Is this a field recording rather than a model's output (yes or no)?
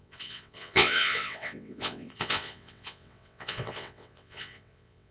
no